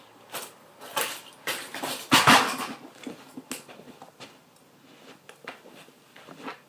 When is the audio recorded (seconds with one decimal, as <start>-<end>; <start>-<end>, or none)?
0.0-0.9; 1.8-6.7